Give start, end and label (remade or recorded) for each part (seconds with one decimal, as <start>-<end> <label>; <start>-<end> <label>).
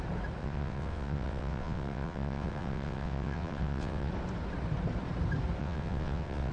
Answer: 0.0-0.4 recorded; 0.4-4.1 remade; 4.1-5.6 recorded; 5.6-6.5 remade